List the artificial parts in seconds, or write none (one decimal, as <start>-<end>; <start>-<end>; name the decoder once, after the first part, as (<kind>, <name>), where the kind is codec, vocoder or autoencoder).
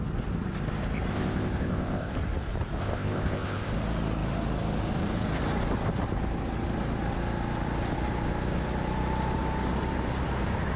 1.1-2.1 (codec, ZipCodec); 2.8-3.7